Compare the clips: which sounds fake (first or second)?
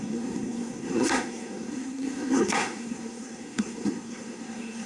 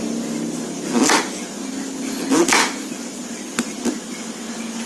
first